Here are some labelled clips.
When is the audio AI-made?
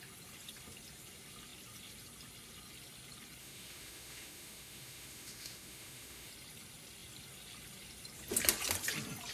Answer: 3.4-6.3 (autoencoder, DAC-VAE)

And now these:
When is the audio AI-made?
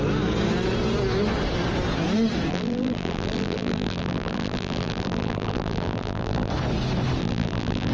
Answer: 2.5-6.5 (vocoder, BigVGAN v2); 7.2-7.9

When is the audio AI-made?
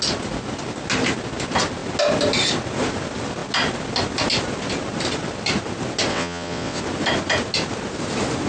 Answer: 6.1-6.8 (vocoder, WaveNeXt)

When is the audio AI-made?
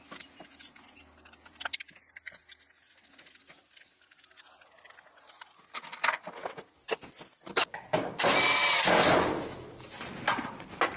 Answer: 6.4-8.6 (vocoder, BigVGAN v2)